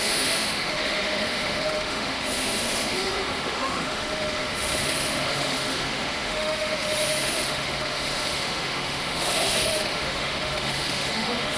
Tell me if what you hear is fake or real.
fake